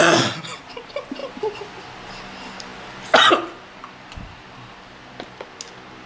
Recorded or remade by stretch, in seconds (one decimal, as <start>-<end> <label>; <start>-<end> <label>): 0.0-6.1 recorded